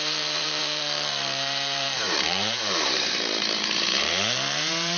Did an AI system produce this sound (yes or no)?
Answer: yes